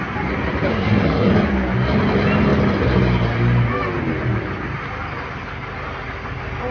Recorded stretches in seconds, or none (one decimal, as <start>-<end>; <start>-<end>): 0.0-0.7; 1.3-6.7